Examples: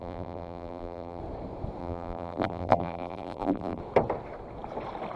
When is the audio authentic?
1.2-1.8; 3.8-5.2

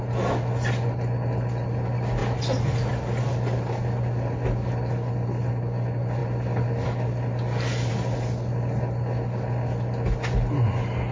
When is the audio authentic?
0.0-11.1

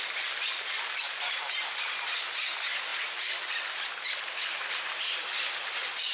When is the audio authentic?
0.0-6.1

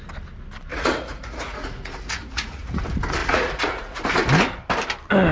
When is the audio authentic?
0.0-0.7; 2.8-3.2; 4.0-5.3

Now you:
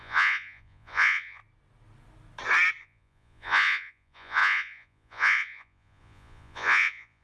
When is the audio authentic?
1.4-2.8